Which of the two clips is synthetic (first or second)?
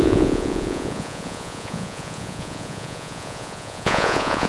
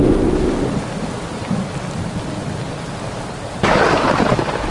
first